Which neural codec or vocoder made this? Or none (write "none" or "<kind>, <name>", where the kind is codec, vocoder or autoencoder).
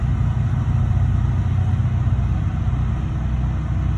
none